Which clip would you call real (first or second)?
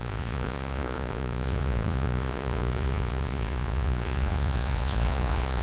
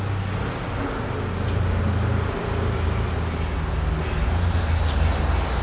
second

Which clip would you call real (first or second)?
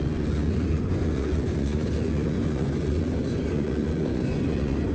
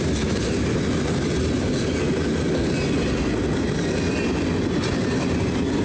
second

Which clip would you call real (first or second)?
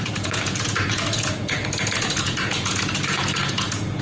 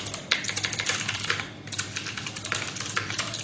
second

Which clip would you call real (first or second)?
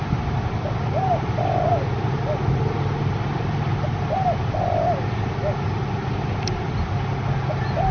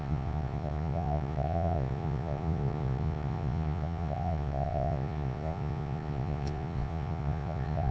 first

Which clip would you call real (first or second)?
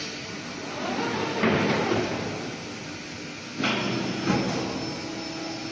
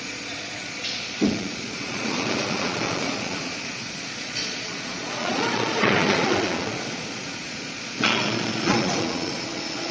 first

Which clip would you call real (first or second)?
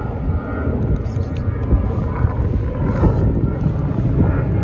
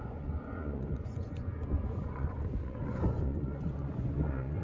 first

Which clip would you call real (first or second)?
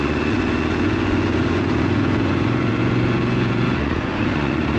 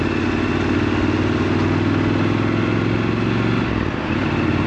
second